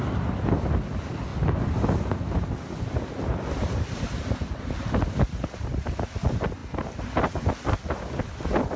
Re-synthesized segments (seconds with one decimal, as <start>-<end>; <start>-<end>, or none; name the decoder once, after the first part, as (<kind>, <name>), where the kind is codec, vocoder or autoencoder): none